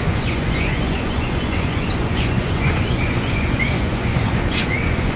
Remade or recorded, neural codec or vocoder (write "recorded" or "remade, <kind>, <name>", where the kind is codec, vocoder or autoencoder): remade, vocoder, Vocos